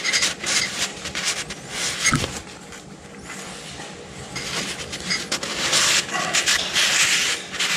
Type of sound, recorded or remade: recorded